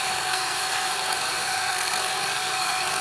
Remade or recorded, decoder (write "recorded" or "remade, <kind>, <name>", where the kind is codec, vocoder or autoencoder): remade, codec, SNAC